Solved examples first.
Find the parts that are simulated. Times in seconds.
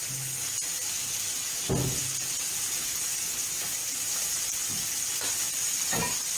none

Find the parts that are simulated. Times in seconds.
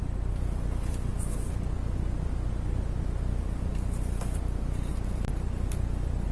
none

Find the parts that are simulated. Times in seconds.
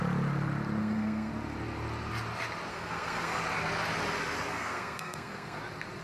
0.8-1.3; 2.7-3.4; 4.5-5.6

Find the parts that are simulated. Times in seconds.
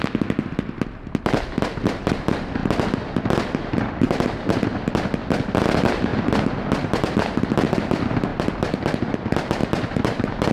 8.3-9.0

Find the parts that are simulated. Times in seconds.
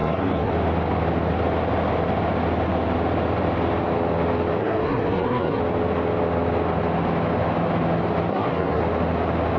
0.0-0.5; 4.6-5.6; 8.3-8.8